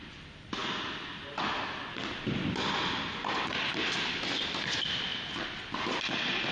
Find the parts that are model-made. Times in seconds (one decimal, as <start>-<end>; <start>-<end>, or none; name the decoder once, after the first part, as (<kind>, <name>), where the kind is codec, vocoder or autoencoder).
none